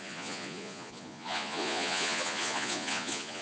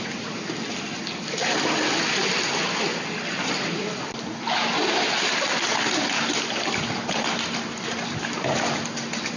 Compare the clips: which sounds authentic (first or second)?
second